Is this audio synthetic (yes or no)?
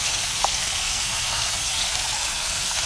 yes